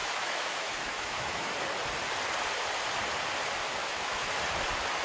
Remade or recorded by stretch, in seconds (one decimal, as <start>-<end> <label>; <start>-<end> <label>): 0.0-1.5 remade; 1.5-3.8 recorded; 3.8-4.3 remade; 4.3-5.0 recorded